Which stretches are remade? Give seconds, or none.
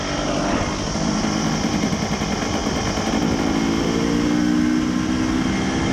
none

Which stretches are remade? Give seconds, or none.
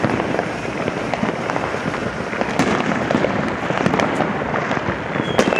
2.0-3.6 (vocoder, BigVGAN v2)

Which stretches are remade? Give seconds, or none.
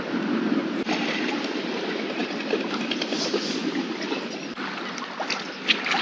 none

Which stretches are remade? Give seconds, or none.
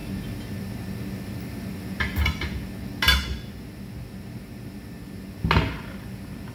none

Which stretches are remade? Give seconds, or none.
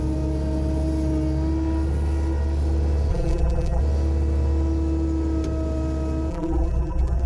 3.1-3.8 (vocoder, BigVGAN v2); 6.3-7.3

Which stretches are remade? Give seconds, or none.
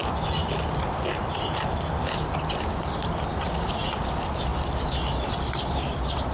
none